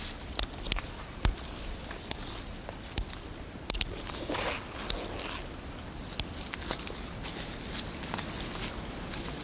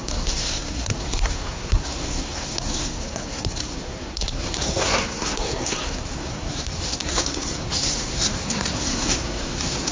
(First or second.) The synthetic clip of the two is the second